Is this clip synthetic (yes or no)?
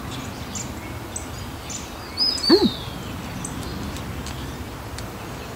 no